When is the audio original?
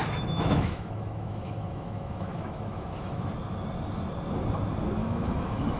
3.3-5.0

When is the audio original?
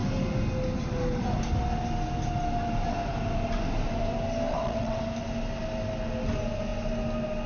0.0-4.5; 5.0-7.5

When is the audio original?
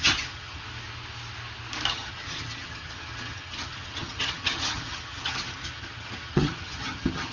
0.6-1.9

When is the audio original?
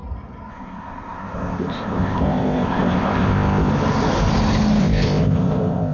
0.0-0.5; 3.7-4.8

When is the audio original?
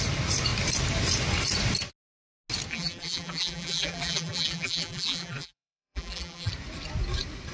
0.0-2.7; 6.5-7.5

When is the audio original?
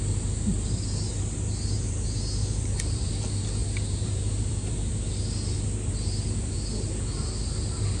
0.0-2.4; 3.1-3.6; 4.7-8.0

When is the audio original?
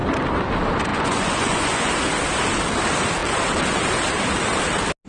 0.0-0.9; 1.9-5.1